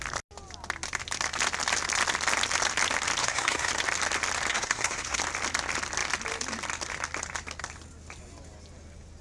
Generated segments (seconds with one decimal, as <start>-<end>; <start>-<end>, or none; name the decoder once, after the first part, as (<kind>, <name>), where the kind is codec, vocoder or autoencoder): 3.2-3.7 (codec, SNAC); 4.5-5.2